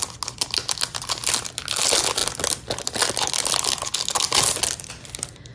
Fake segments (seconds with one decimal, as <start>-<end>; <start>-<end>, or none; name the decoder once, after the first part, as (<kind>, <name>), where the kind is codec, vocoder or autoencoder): none